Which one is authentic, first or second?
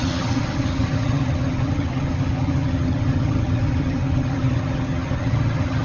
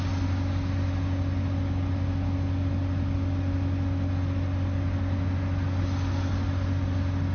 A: second